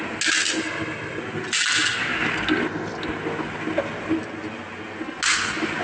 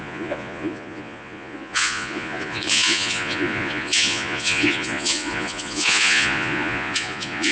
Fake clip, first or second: second